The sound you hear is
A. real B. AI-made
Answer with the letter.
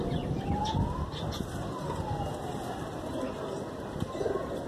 A